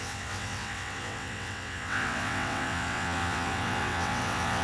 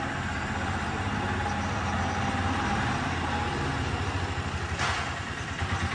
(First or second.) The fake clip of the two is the first